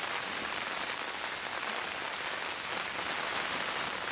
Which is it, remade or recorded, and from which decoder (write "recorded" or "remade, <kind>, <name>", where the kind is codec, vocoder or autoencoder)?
recorded